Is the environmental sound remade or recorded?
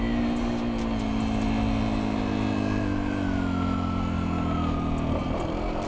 recorded